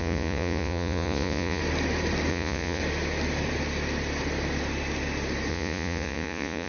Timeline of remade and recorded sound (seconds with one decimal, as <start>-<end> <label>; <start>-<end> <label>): 0.0-1.6 remade; 1.6-2.3 recorded; 2.3-2.8 remade; 2.8-5.5 recorded; 5.5-6.7 remade